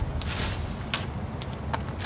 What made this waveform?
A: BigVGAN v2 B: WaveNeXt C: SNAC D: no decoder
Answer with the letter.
D